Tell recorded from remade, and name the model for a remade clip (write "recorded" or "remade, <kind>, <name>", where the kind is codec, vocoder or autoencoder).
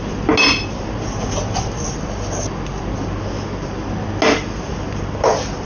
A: recorded